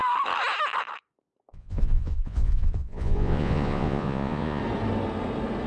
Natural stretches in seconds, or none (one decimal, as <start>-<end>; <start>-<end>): 0.0-1.5; 4.6-5.7